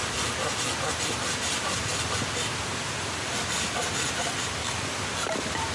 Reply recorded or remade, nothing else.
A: recorded